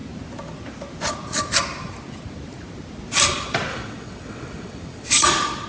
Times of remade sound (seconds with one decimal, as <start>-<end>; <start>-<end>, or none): 3.7-5.1